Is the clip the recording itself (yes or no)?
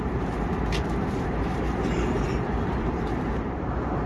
no